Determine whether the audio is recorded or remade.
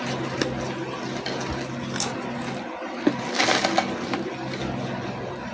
recorded